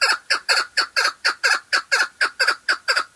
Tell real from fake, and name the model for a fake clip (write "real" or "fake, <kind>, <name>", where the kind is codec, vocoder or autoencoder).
real